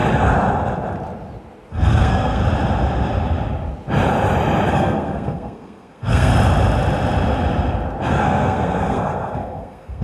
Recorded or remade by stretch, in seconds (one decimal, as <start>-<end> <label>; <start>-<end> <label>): 0.0-1.7 recorded; 1.7-2.4 remade; 2.4-4.7 recorded; 4.7-6.3 remade; 6.3-8.1 recorded; 8.1-10.0 remade